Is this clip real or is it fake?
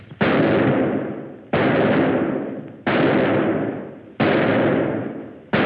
real